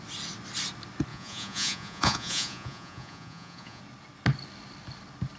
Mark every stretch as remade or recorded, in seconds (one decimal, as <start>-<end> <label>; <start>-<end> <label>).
0.0-1.1 recorded; 1.1-3.8 remade; 3.8-5.4 recorded